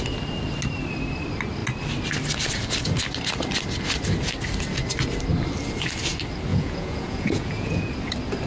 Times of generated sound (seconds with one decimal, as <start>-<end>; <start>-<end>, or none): 6.5-7.9